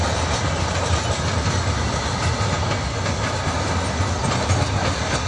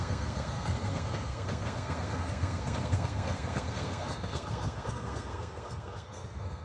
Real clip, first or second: first